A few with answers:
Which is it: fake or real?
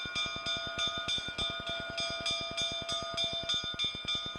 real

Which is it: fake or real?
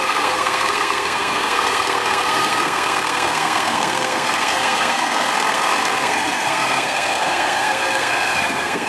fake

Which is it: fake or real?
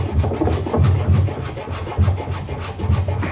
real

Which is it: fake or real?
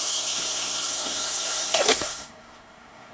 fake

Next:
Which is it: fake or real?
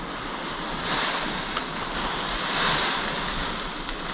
real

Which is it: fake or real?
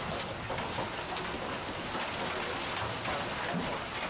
real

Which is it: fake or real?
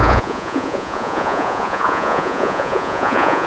fake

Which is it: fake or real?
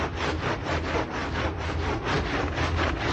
fake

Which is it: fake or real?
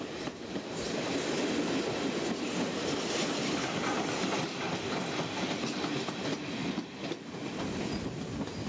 real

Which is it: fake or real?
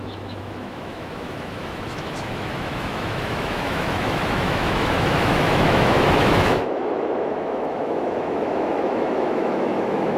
fake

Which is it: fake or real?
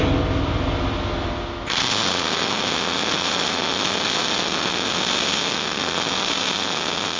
real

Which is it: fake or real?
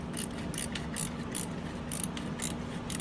real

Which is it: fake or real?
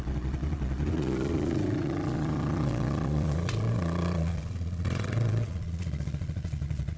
fake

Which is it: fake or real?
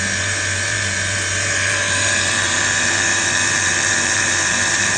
fake